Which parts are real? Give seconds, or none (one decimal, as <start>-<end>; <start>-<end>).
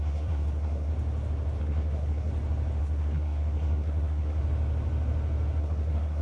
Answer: 0.9-1.6; 2.3-2.8; 4.4-5.6